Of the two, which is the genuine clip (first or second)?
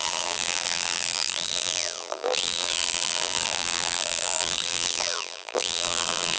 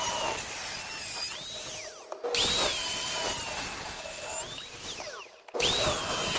second